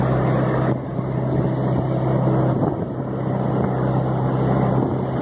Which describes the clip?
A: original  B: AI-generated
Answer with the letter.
A